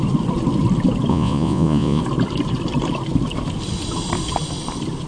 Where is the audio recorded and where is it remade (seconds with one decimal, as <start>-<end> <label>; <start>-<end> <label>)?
0.0-1.1 recorded; 1.1-2.0 remade; 2.0-5.1 recorded